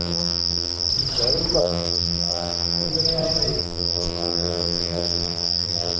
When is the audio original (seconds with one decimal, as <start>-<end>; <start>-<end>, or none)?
0.9-1.6; 2.9-3.6